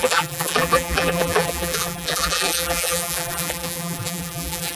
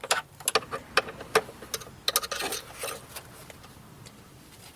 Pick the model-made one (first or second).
first